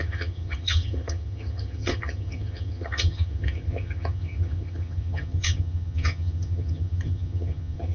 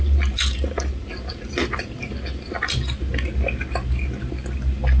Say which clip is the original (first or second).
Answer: second